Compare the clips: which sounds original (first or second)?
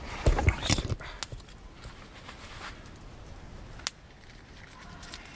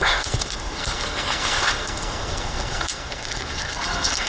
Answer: first